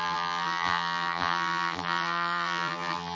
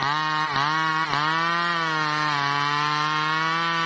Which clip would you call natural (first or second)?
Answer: second